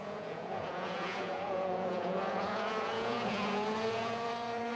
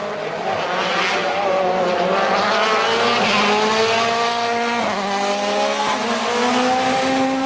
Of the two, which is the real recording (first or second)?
second